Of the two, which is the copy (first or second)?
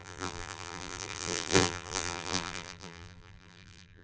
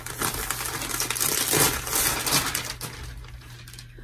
first